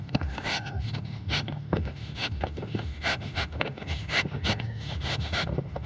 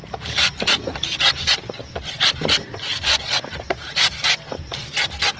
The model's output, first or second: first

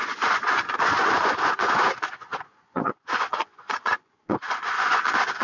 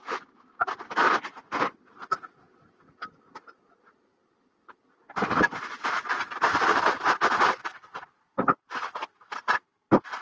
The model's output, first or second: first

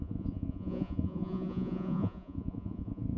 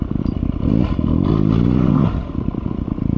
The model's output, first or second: first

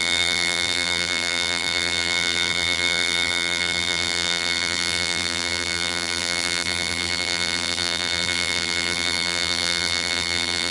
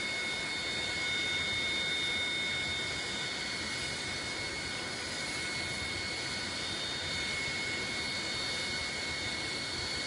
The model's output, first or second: first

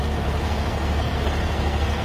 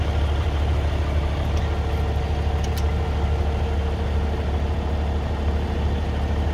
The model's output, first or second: first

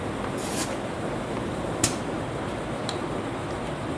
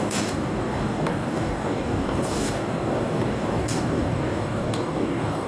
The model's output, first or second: second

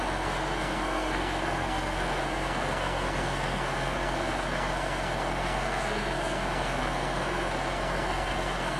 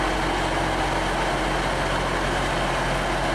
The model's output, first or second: first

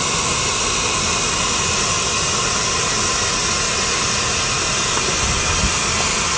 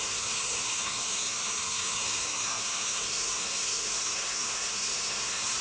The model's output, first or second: second